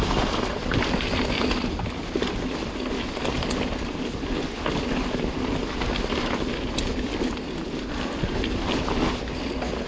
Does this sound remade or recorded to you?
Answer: recorded